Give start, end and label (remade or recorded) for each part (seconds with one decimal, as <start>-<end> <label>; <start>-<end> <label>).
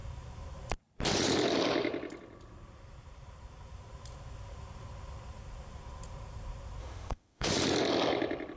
0.0-6.8 recorded; 6.8-7.5 remade; 7.5-8.6 recorded